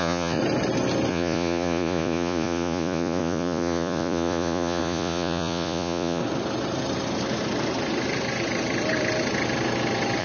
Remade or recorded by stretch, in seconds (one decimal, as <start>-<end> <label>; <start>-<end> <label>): 0.0-0.4 remade; 0.4-1.1 recorded; 1.1-6.2 remade; 6.2-10.2 recorded

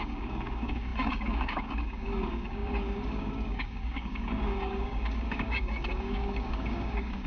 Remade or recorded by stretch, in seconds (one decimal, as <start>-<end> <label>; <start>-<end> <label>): 0.0-7.3 remade

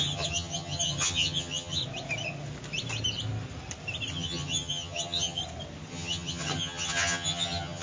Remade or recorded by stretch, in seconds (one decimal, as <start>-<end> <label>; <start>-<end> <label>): 0.0-1.8 remade; 1.8-4.1 recorded; 4.1-5.4 remade; 5.4-5.9 recorded; 5.9-7.8 remade

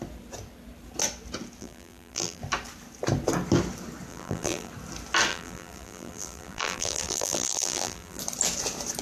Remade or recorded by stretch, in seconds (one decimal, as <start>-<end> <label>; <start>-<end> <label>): 0.0-1.6 recorded; 1.6-2.4 remade; 2.4-4.1 recorded; 4.1-4.7 remade; 4.7-5.3 recorded; 5.3-8.2 remade; 8.2-9.0 recorded

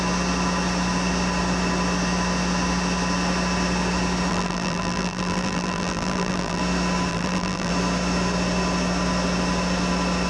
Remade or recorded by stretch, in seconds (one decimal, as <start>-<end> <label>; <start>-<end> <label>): 0.0-4.3 recorded; 4.3-6.6 remade; 6.6-7.1 recorded; 7.1-7.7 remade; 7.7-10.3 recorded

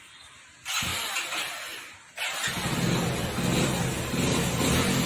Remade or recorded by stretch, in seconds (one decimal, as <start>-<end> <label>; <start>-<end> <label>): 0.0-5.1 recorded